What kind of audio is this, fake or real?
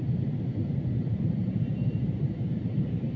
fake